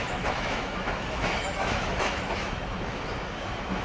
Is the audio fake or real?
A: fake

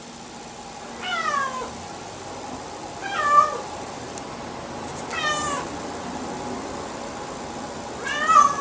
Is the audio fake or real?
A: real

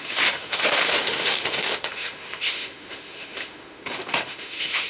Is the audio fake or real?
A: fake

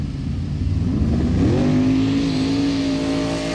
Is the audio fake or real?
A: real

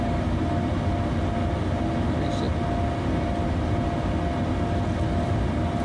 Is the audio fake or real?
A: real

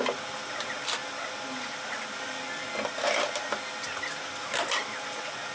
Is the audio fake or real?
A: real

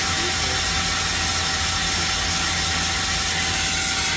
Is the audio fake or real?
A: real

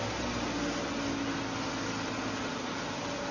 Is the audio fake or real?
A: real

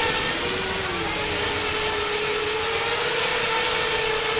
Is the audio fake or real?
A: real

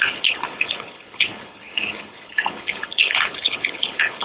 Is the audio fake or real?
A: fake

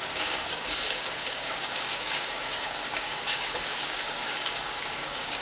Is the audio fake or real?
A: fake